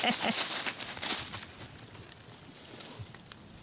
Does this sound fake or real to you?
real